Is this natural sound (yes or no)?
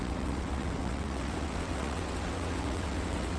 no